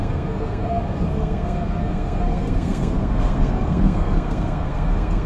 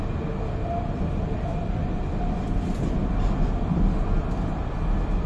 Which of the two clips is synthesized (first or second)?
first